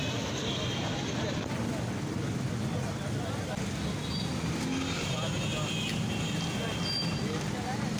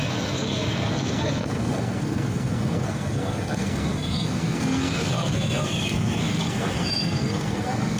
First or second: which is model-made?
second